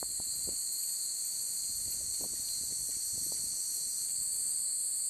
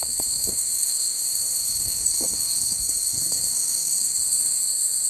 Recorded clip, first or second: first